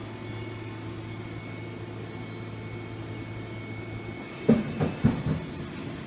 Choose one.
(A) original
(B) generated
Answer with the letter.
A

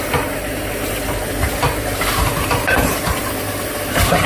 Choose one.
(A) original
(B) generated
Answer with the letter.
B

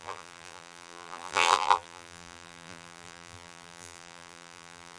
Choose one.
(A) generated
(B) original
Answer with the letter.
A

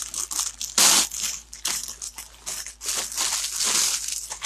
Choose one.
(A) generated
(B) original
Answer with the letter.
B